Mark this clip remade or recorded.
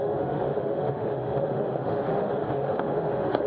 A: remade